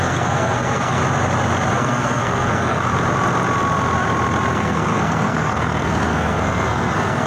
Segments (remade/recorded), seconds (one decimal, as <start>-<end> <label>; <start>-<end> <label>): 0.0-1.0 remade; 1.0-1.7 recorded; 1.7-2.9 remade; 2.9-4.5 recorded; 4.5-7.3 remade